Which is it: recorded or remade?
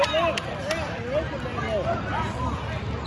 recorded